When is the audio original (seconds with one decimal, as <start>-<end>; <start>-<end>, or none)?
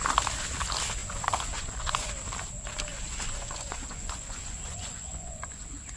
0.0-1.0; 2.1-2.9; 5.6-6.0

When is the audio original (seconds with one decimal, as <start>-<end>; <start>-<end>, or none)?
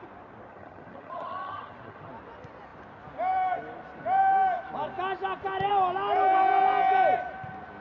0.0-0.5; 2.1-7.8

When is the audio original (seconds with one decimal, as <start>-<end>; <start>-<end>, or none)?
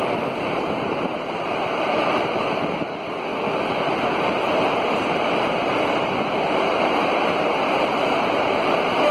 none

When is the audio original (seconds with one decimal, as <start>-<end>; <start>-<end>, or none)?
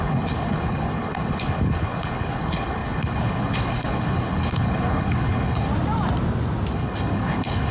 5.7-6.7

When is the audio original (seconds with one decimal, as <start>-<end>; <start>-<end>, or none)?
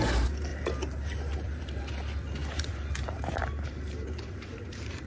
0.0-0.5; 1.8-2.4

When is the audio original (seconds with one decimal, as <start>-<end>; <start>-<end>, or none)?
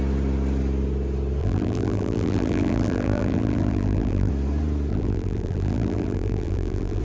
0.0-1.4; 4.3-4.9